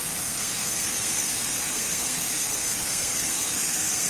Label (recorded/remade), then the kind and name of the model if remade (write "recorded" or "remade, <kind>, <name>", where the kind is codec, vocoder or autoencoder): remade, codec, SNAC